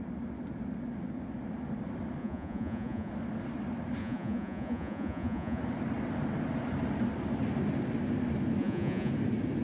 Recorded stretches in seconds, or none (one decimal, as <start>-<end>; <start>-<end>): 0.0-2.2; 3.1-4.0; 5.6-8.6; 9.1-9.6